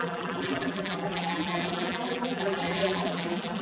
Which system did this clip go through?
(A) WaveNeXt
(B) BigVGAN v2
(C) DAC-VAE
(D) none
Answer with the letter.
B